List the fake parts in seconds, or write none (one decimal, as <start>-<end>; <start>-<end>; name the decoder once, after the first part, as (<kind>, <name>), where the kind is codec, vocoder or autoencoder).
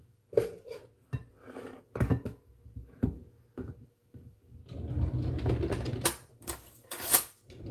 0.0-0.8 (codec, DAC); 1.3-4.6; 6.3-7.7